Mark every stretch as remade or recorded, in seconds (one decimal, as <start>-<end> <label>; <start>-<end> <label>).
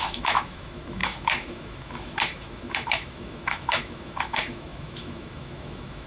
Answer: 0.0-6.1 remade